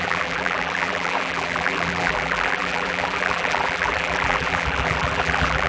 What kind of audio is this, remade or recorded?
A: remade